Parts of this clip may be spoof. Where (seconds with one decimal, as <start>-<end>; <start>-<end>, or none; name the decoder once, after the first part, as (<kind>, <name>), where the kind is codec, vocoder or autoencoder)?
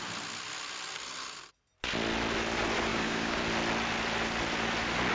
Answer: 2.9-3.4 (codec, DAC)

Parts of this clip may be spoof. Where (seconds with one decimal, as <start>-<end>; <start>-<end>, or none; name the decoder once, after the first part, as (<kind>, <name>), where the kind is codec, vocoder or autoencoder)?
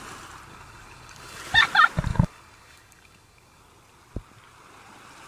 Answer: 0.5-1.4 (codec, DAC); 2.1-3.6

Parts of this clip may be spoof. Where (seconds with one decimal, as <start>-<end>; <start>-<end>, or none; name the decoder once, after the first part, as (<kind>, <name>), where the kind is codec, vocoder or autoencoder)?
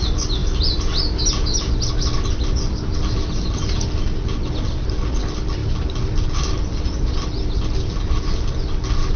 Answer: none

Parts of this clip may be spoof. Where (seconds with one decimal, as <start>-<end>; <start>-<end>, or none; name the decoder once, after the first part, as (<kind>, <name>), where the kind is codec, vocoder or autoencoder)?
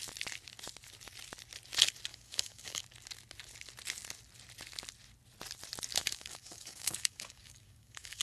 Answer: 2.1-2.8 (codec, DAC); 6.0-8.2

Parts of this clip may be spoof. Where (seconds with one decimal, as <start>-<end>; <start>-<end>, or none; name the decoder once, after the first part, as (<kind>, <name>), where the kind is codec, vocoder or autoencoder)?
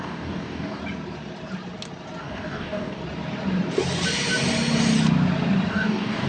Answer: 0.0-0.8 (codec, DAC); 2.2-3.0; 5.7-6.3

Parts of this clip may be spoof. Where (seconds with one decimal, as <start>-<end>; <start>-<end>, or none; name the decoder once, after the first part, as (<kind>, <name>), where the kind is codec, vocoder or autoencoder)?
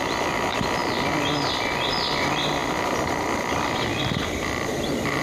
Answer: none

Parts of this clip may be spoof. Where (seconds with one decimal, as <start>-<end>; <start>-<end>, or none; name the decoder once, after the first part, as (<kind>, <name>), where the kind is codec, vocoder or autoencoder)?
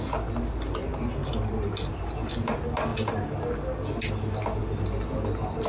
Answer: none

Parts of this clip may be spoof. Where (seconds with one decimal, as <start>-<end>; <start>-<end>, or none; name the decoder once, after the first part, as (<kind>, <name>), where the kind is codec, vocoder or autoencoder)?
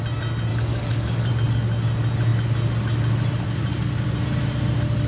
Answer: 0.5-1.3 (codec, DAC)